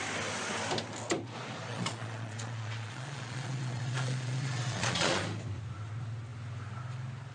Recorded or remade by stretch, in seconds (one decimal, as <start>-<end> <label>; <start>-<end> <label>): 0.0-1.7 recorded; 1.7-5.2 remade; 5.2-7.3 recorded